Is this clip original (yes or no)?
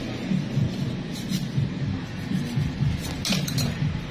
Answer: yes